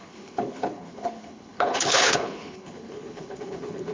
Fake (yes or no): yes